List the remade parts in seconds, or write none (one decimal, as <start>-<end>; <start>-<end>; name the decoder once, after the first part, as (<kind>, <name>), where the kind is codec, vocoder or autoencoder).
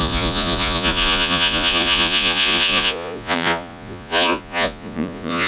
0.0-5.5 (vocoder, Vocos)